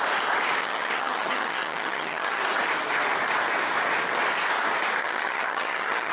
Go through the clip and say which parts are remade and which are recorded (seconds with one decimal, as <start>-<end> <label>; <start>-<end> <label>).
0.0-0.6 recorded; 0.6-2.4 remade; 2.4-5.0 recorded; 5.0-6.1 remade